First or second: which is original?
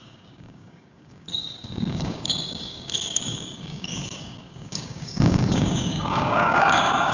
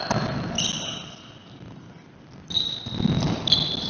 second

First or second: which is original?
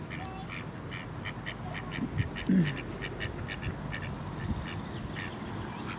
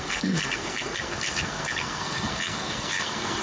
first